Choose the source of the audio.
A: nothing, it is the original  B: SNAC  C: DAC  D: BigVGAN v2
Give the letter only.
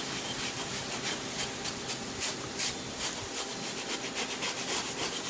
A